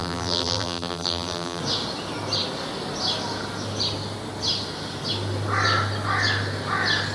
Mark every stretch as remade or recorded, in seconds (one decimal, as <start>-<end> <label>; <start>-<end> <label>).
0.0-1.6 remade; 1.6-7.1 recorded